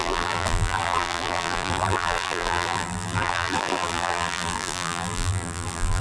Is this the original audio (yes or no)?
no